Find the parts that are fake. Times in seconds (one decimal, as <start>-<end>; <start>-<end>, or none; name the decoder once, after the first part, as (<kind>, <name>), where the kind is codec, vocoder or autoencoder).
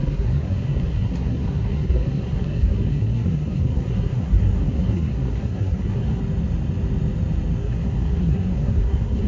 0.0-6.2 (codec, SNAC); 7.6-9.3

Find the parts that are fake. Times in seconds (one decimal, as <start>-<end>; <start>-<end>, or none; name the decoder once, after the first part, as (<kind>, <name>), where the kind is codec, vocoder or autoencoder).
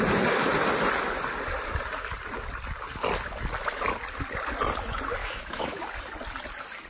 5.2-5.8 (autoencoder, DAC-VAE)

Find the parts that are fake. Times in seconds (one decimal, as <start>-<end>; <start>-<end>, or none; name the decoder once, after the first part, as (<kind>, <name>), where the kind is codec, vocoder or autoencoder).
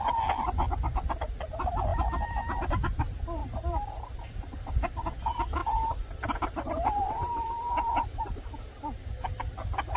3.4-4.9 (vocoder, BigVGAN v2); 5.6-9.2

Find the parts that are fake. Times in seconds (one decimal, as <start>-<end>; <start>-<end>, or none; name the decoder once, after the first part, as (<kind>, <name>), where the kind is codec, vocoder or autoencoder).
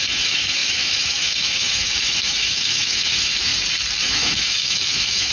0.0-3.5 (autoencoder, DAC-VAE); 4.0-5.3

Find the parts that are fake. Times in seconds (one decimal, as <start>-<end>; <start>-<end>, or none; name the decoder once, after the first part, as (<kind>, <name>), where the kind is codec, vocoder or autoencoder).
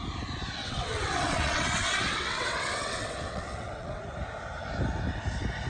0.6-4.0 (vocoder, WaveNeXt)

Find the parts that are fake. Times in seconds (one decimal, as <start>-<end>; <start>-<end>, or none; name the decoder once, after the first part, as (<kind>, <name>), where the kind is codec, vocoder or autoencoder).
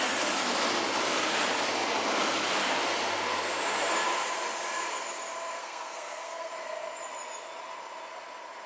5.6-6.5 (codec, SNAC)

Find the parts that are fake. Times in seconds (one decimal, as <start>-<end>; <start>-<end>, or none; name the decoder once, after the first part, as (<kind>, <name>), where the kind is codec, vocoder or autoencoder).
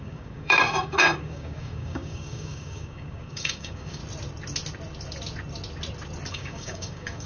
0.0-4.0 (codec, DAC); 6.3-7.3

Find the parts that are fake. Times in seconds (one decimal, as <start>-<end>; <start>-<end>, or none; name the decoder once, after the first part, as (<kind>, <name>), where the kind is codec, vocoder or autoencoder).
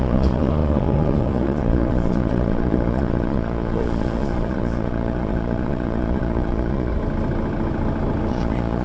0.0-6.9 (vocoder, Vocos); 8.3-8.8